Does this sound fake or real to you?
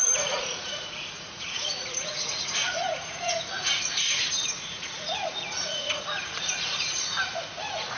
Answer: fake